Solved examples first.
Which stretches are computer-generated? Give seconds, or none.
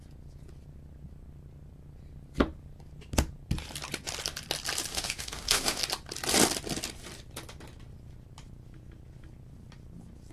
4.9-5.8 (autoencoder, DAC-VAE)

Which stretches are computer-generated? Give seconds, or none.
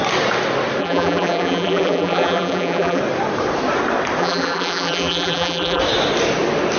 0.8-3.0 (vocoder, BigVGAN v2); 4.2-5.8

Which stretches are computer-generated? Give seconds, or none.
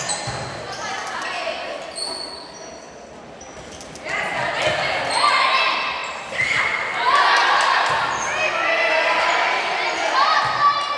none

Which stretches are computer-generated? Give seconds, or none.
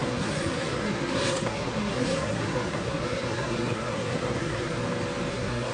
0.0-4.8 (codec, SNAC); 5.3-5.7